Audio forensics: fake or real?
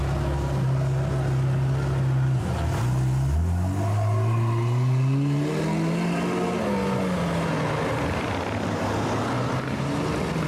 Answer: real